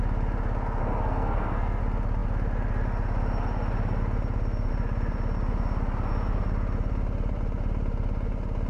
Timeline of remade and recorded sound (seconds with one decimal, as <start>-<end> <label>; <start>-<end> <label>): 0.0-0.8 recorded; 0.8-1.8 remade; 1.8-8.7 recorded